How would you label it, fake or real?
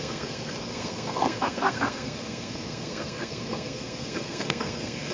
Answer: fake